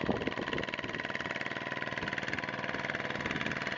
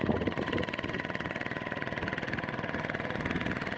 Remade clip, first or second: second